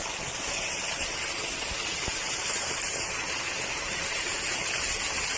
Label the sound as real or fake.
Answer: real